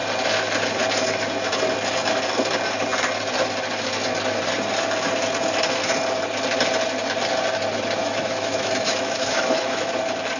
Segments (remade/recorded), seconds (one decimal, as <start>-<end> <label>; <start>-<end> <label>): 0.0-8.0 recorded; 8.0-9.9 remade; 9.9-10.4 recorded